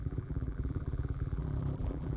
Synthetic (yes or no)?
yes